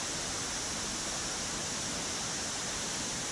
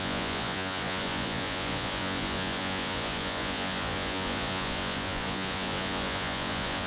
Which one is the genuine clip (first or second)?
first